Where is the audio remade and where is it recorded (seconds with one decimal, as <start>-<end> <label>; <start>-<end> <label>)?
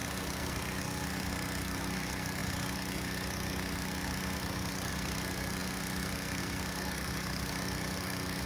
0.0-8.5 remade